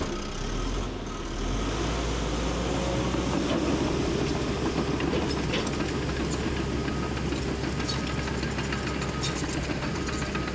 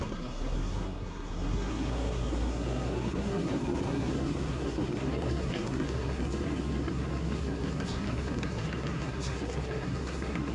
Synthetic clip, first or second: second